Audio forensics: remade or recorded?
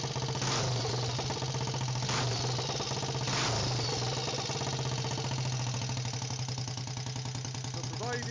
recorded